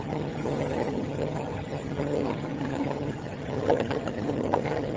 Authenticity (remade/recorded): remade